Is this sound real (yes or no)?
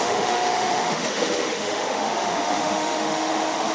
no